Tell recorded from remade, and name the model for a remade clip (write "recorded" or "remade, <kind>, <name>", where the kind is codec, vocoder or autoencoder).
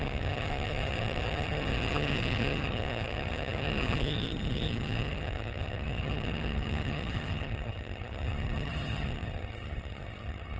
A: remade, vocoder, HiFi-GAN